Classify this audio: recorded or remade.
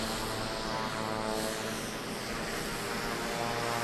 recorded